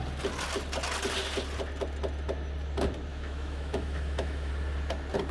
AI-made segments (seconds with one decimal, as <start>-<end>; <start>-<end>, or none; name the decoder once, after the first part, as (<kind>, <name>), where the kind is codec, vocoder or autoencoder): 3.1-4.5 (autoencoder, DAC-VAE)